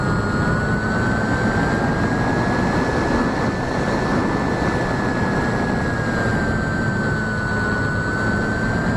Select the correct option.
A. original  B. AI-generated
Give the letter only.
A